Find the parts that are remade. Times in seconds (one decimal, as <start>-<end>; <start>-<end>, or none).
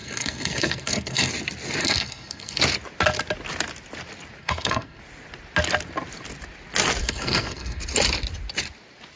0.0-1.3; 1.8-2.6; 4.4-5.0; 7.0-7.8